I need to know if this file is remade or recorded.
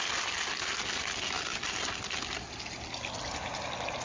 recorded